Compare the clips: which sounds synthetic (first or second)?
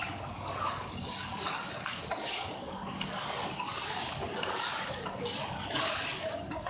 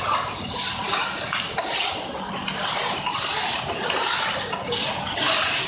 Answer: first